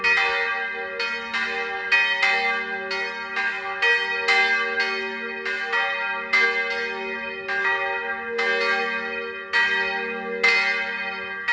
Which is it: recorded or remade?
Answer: recorded